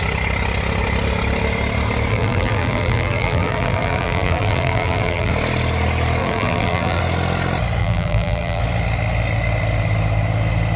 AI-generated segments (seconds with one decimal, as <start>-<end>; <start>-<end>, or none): 2.1-5.3; 6.2-7.0; 7.8-8.6